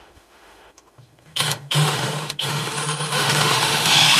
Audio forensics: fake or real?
fake